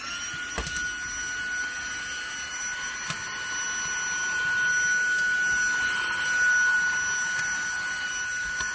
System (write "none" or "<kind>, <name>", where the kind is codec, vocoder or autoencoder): none